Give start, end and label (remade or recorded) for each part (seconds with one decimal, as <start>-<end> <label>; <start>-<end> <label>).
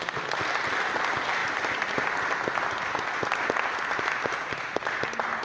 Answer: 0.0-5.4 recorded